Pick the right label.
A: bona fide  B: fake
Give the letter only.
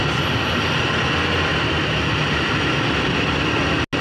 A